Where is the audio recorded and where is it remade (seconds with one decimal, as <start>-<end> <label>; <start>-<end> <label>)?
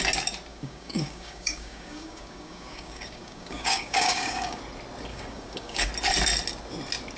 0.0-0.5 recorded; 0.5-4.6 remade; 4.6-5.1 recorded; 5.1-5.9 remade; 5.9-7.2 recorded